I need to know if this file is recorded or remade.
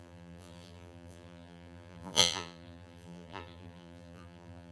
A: remade